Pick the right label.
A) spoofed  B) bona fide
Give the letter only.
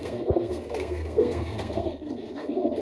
A